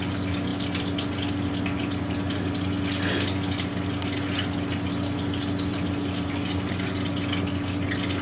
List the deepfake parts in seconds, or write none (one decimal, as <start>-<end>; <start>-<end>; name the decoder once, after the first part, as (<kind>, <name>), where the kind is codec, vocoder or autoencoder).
none